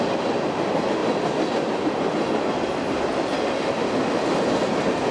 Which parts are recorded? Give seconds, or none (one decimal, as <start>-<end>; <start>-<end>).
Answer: 0.0-1.0; 2.0-3.1; 4.0-5.1